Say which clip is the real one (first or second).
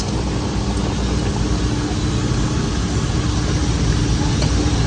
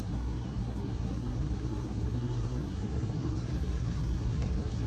first